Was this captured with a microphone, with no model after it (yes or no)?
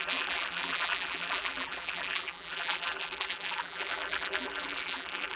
no